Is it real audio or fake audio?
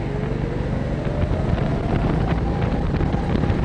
real